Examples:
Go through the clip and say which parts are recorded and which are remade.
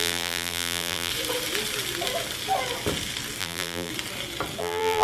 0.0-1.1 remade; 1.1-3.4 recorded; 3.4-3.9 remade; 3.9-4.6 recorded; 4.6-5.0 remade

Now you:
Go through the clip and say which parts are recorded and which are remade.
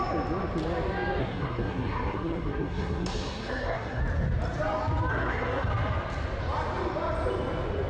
0.0-1.2 recorded; 1.2-4.0 remade; 4.0-5.1 recorded; 5.1-5.7 remade; 5.7-7.9 recorded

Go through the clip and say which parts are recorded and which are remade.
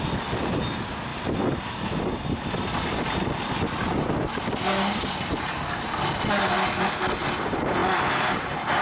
0.0-8.8 recorded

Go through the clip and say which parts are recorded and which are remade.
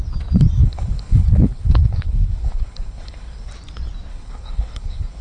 0.0-0.6 recorded; 0.6-3.5 remade; 3.5-4.1 recorded; 4.1-5.2 remade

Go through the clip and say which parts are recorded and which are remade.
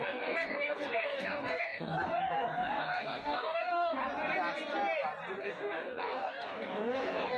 0.0-4.0 remade; 4.0-5.4 recorded; 5.4-7.4 remade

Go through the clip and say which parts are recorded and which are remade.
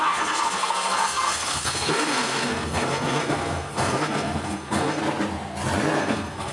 0.0-5.0 remade; 5.0-6.0 recorded; 6.0-6.5 remade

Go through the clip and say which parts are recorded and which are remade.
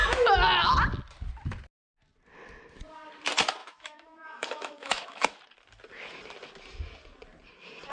0.0-3.6 recorded; 3.6-5.4 remade; 5.4-7.9 recorded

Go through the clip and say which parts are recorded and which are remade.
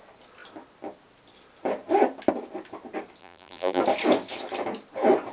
0.0-3.2 recorded; 3.2-3.8 remade; 3.8-5.3 recorded